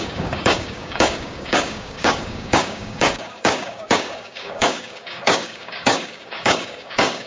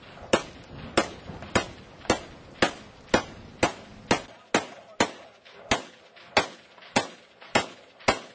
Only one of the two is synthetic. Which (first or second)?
first